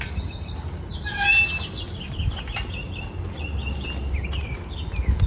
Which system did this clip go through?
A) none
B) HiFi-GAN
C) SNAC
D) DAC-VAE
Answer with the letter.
A